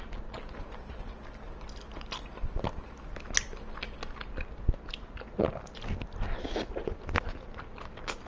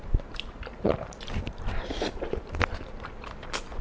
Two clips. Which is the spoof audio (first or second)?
second